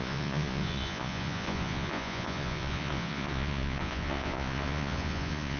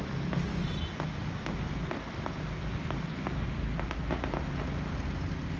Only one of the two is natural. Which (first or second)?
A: second